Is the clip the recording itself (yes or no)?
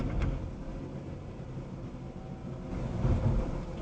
yes